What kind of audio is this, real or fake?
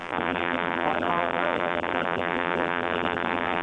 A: fake